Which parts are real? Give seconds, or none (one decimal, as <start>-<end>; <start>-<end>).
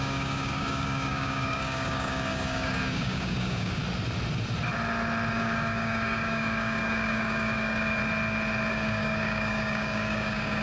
3.8-5.3; 8.0-8.7